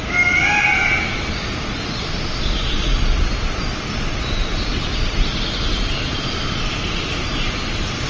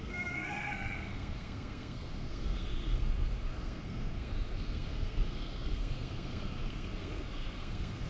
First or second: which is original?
first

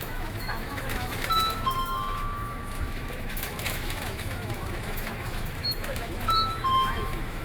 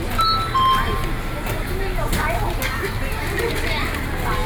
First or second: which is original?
second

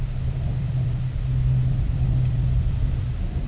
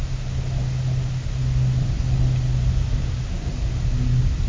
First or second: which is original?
second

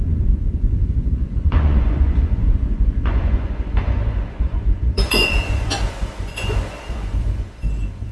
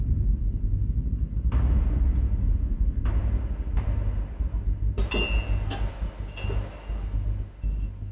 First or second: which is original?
second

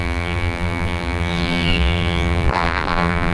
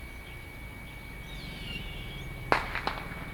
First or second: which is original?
second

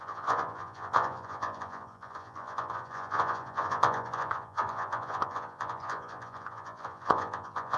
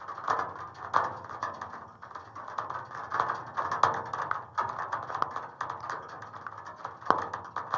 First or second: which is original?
second